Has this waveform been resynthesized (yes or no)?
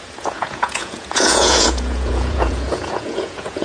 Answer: yes